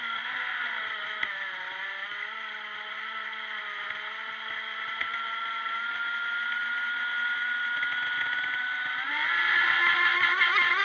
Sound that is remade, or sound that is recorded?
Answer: recorded